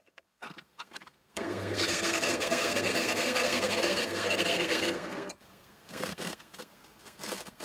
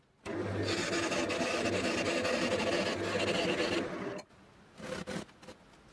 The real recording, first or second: second